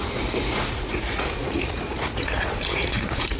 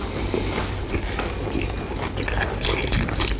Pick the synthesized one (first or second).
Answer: first